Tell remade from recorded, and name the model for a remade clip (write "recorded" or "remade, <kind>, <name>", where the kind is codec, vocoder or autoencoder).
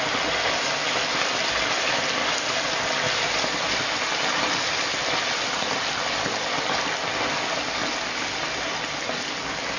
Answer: recorded